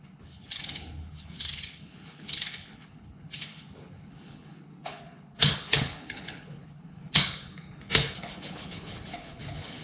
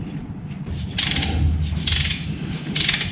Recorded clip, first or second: second